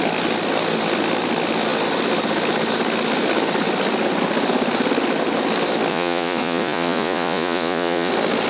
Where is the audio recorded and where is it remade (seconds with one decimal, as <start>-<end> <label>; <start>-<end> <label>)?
0.0-5.9 recorded; 5.9-8.1 remade; 8.1-8.5 recorded